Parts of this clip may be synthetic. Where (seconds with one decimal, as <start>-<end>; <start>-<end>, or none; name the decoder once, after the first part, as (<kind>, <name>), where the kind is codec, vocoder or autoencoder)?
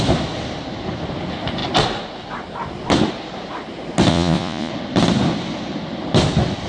4.1-4.7 (vocoder, Vocos)